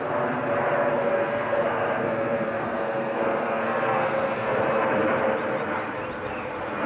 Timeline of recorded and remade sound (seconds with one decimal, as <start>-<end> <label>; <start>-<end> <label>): 0.0-1.0 recorded; 1.0-4.6 remade; 4.6-6.9 recorded